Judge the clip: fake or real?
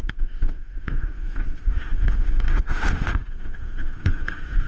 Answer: fake